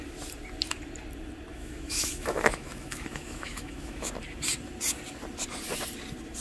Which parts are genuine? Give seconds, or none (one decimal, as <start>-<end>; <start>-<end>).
0.0-1.5; 4.1-6.4